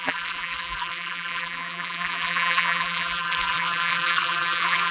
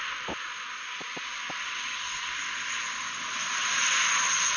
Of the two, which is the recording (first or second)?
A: second